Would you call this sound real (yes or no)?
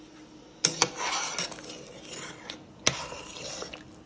yes